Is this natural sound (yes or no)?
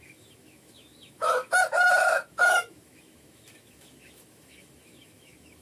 no